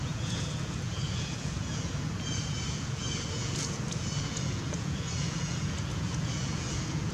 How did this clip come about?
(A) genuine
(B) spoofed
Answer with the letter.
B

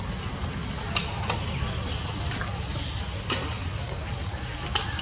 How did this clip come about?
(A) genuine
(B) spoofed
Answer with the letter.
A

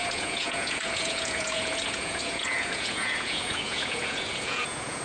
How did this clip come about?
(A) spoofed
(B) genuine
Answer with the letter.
A